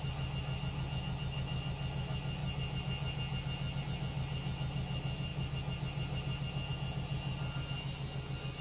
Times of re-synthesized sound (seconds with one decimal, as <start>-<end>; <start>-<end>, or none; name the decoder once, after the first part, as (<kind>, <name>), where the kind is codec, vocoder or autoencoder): none

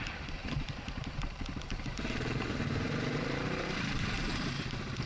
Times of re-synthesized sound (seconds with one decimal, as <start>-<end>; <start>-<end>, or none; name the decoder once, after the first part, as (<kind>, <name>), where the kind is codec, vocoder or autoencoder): 0.0-5.1 (vocoder, BigVGAN v2)

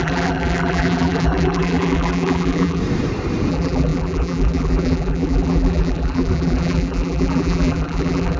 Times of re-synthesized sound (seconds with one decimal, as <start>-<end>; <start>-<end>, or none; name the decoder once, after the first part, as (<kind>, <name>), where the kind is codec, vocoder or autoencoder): 0.0-2.8 (vocoder, BigVGAN v2); 3.5-8.4

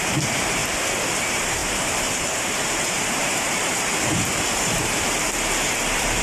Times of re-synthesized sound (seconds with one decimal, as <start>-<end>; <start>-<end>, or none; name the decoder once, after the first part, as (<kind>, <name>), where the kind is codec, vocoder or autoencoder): 0.0-0.6 (vocoder, BigVGAN v2); 1.2-6.2

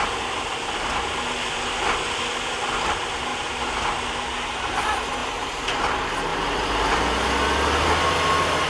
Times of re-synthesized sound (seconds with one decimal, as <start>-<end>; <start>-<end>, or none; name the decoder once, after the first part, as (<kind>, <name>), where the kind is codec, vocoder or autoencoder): 5.2-5.8 (vocoder, BigVGAN v2); 6.3-7.1

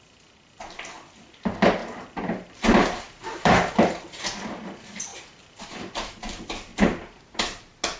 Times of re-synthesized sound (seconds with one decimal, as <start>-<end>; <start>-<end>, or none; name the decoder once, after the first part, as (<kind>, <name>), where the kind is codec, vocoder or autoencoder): 1.8-4.2 (vocoder, BigVGAN v2); 5.1-6.1; 6.7-7.6

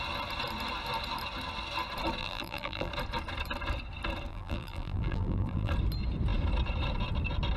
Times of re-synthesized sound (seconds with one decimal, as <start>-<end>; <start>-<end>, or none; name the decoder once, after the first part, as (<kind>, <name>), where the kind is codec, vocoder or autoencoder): 2.2-2.9 (vocoder, BigVGAN v2); 4.3-5.7

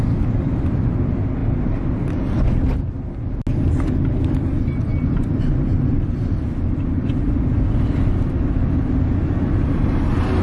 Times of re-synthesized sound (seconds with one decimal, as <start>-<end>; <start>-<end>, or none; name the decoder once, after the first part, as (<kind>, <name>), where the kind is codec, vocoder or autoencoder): 4.9-7.1 (vocoder, BigVGAN v2)